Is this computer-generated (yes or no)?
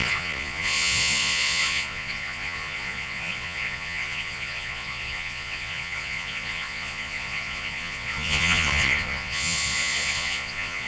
yes